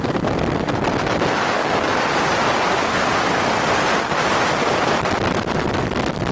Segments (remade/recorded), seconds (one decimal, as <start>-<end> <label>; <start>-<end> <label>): 0.0-1.9 recorded; 1.9-5.7 remade; 5.7-6.3 recorded